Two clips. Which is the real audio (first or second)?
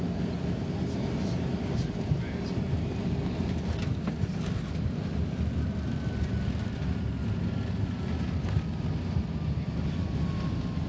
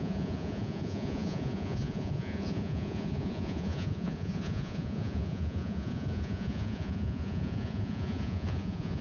first